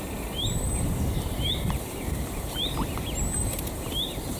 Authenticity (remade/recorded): remade